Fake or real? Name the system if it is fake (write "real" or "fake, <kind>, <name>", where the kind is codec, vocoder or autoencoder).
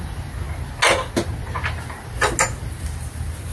real